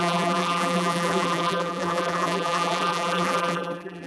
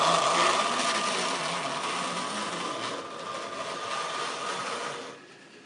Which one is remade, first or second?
first